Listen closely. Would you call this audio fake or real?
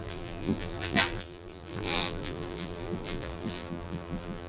fake